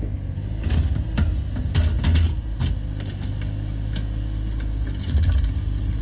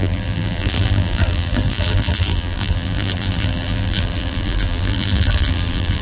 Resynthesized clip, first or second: second